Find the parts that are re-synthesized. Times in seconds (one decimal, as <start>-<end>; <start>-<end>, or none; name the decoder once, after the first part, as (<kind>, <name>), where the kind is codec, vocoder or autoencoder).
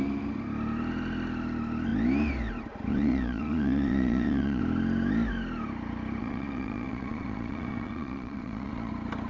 2.9-4.6 (vocoder, Vocos); 6.2-8.9